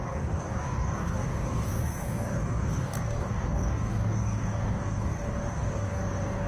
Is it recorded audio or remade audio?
remade